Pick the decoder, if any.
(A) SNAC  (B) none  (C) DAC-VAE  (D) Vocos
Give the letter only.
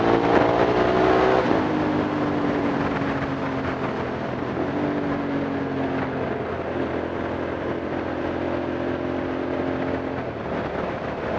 B